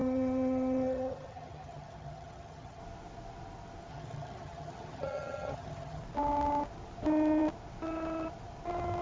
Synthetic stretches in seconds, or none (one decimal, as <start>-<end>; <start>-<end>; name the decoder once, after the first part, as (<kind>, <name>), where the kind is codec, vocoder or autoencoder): 0.0-2.8 (vocoder, HiFi-GAN); 3.9-6.0